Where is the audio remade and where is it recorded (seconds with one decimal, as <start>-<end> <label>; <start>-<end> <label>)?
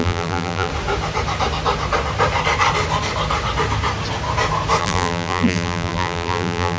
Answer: 0.0-0.7 remade; 0.7-4.8 recorded; 4.8-6.8 remade